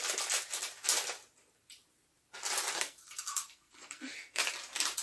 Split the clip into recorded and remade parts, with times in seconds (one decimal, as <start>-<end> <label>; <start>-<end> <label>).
0.0-2.7 recorded; 2.7-4.4 remade; 4.4-5.0 recorded